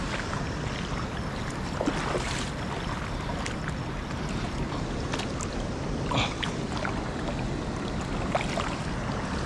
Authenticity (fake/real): real